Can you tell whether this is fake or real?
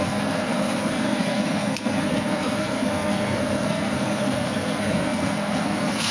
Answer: fake